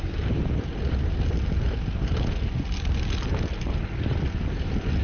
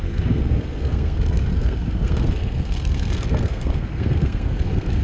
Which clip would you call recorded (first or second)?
first